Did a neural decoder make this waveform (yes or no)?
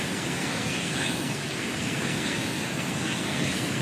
yes